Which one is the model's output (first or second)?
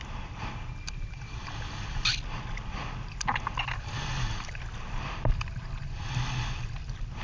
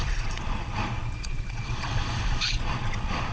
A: second